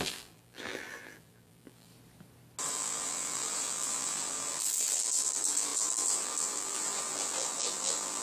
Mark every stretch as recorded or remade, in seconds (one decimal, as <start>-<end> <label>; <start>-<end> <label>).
0.0-1.9 remade; 1.9-2.7 recorded; 2.7-8.2 remade